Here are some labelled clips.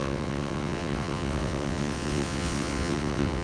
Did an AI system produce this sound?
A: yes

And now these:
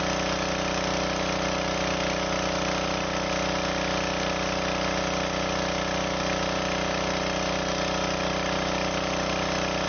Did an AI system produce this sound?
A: no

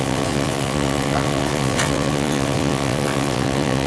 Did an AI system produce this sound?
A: yes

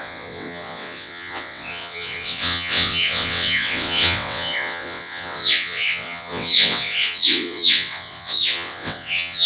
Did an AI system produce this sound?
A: yes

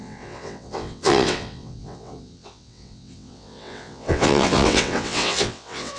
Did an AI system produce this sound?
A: yes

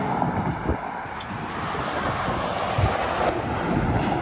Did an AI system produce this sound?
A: no